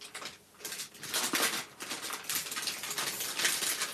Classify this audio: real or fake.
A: real